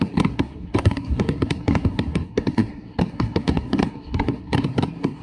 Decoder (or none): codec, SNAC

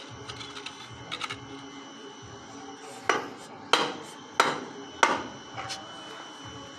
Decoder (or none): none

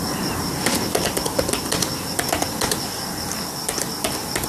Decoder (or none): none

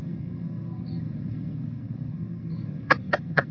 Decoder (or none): codec, SNAC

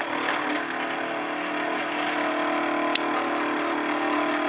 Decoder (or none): none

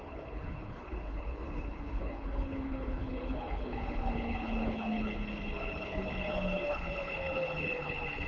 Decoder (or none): codec, HILCodec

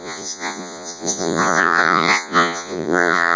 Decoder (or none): vocoder, Vocos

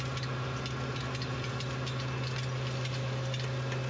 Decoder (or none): none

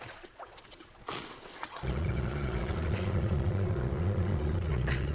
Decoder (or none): vocoder, Vocos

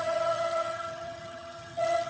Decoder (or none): vocoder, HiFi-GAN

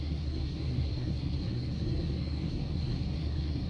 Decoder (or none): codec, SNAC